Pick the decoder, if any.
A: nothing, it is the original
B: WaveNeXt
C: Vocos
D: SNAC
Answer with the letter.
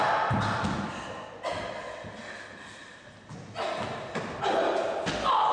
A